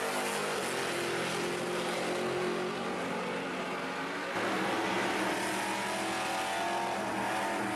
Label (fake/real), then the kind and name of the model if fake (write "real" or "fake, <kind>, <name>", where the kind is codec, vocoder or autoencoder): real